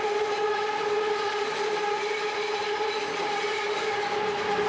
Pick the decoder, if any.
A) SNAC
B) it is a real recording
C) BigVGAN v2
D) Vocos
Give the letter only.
B